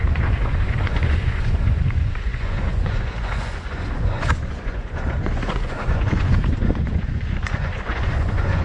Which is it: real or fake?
fake